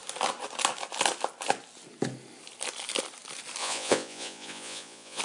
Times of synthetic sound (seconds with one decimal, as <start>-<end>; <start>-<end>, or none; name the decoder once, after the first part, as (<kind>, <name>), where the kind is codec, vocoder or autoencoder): 3.6-5.2 (vocoder, Vocos)